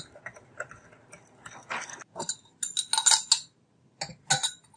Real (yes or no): yes